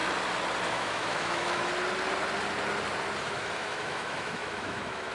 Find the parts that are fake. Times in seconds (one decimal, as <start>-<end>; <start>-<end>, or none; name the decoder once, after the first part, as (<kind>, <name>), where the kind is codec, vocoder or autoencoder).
0.7-1.7 (autoencoder, DAC-VAE); 3.2-5.1

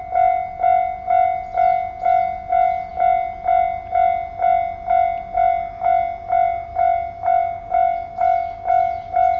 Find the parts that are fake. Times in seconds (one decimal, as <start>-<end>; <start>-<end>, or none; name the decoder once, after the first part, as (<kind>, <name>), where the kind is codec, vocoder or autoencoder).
none

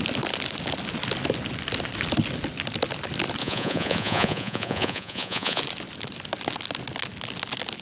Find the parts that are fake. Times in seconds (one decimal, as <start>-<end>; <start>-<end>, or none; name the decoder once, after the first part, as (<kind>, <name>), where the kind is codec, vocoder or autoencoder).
3.4-5.6 (vocoder, Vocos)

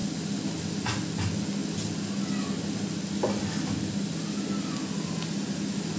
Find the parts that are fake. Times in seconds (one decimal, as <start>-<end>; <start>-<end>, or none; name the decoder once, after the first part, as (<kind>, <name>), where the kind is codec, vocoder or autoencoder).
none

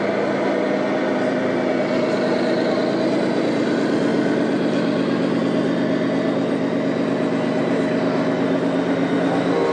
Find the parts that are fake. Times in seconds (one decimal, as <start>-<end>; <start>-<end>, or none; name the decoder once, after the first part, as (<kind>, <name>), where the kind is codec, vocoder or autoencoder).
none

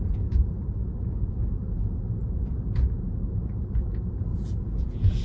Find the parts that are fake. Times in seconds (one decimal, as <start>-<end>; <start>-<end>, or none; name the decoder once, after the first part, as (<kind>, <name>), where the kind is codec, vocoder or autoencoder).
4.3-5.2 (vocoder, Vocos)

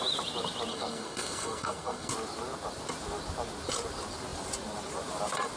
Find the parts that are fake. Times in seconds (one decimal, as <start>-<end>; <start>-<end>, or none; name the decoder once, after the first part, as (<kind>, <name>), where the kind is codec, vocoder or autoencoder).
0.7-2.1 (codec, SNAC)

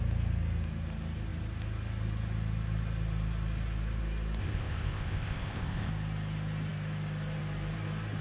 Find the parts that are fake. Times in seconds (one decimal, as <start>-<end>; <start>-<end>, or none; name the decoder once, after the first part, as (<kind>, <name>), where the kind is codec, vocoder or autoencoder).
4.4-5.9 (codec, ZipCodec)